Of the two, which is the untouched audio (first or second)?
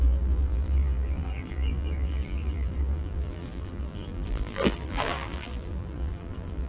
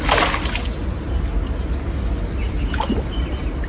second